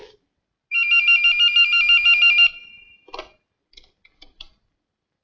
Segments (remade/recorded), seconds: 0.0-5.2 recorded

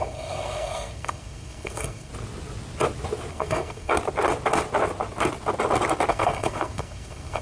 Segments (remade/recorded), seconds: 0.0-2.1 remade; 2.1-3.3 recorded; 3.3-3.9 remade; 3.9-6.1 recorded; 6.1-7.4 remade